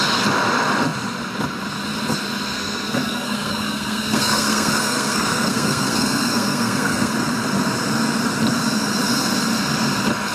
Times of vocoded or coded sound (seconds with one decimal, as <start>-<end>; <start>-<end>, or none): 2.5-7.1